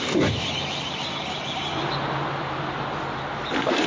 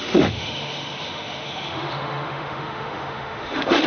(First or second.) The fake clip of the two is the second